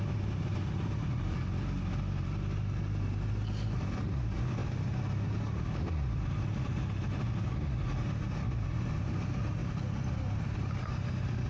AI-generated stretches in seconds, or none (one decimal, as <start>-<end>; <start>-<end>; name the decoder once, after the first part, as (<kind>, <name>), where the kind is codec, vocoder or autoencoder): none